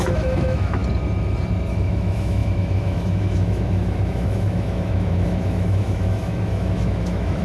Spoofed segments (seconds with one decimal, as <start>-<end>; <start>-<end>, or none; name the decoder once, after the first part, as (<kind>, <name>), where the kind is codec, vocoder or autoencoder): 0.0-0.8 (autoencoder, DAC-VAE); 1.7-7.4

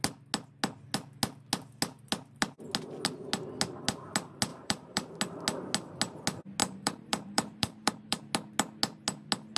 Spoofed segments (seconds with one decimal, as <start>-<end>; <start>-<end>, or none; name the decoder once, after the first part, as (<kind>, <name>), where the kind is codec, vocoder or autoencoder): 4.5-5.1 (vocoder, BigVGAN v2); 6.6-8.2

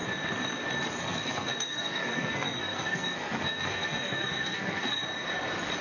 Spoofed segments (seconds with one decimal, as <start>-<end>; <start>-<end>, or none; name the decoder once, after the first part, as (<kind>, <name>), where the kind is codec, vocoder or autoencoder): 1.0-5.0 (codec, SNAC)

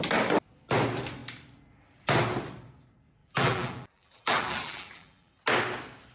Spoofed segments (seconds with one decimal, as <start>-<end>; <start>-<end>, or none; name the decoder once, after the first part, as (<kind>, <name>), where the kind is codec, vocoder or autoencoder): 3.2-5.3 (vocoder, BigVGAN v2)

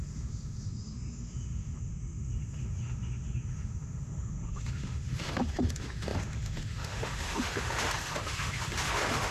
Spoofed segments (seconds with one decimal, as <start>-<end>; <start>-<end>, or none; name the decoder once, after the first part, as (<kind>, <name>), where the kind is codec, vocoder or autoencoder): 0.0-9.3 (autoencoder, DAC-VAE)

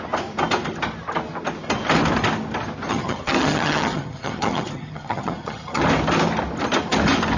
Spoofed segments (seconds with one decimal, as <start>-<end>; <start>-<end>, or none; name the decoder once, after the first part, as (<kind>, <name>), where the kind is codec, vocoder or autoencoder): 2.9-5.8 (vocoder, HiFi-GAN)

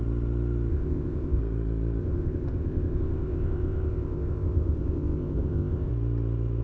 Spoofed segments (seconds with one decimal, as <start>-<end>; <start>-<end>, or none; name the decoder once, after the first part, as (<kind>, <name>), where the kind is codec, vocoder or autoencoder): 0.7-1.4 (codec, ZipCodec); 2.0-5.9

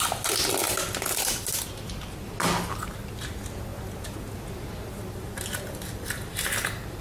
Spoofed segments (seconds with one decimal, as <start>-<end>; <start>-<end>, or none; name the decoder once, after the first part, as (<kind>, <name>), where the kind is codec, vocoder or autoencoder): none